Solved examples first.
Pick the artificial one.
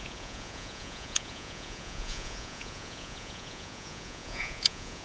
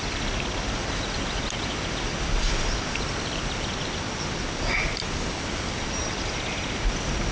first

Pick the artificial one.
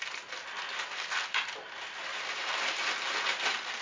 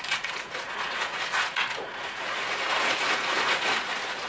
second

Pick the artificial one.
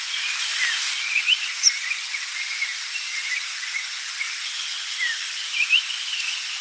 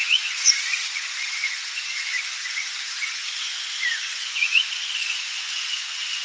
second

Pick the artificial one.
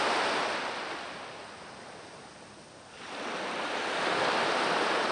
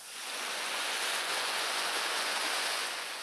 second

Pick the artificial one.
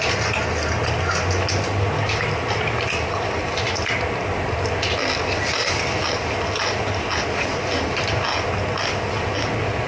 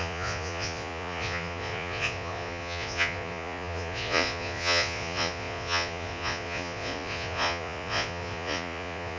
second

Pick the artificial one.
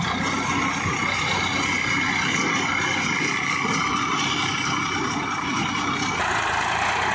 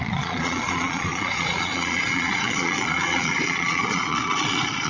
second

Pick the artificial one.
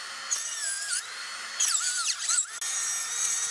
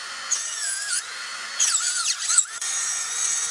second